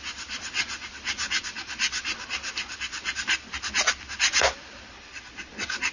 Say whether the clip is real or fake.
real